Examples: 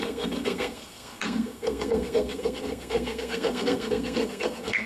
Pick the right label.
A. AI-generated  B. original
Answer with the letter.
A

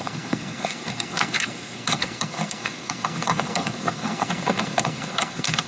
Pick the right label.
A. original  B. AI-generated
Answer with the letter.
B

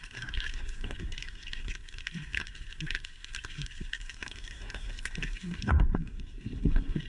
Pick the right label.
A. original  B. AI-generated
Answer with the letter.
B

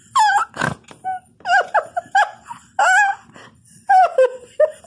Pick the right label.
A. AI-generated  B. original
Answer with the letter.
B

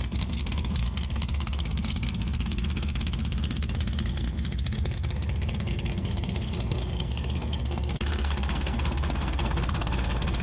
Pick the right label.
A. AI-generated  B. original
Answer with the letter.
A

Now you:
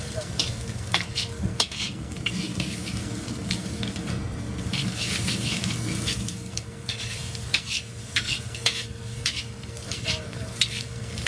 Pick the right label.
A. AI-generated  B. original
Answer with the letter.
A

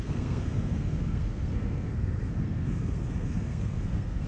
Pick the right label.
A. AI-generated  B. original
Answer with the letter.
A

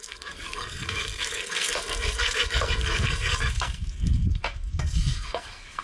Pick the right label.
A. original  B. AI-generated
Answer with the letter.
B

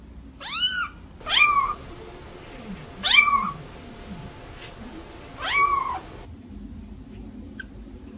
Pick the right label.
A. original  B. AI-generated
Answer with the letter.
A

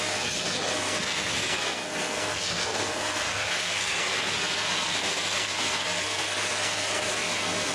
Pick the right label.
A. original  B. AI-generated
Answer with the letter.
B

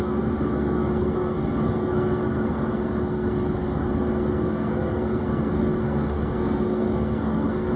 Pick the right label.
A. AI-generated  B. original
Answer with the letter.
A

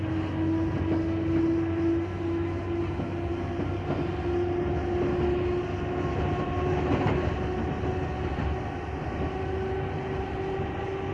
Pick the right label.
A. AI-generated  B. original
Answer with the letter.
B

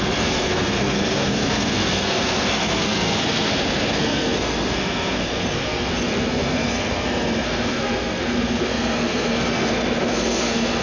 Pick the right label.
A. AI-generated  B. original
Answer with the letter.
A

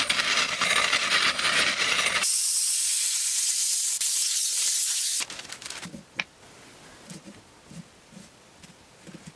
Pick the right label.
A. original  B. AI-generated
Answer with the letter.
A